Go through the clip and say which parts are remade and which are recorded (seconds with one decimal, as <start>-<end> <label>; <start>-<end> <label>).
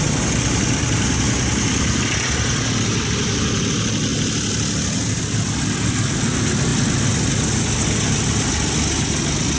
0.0-9.6 recorded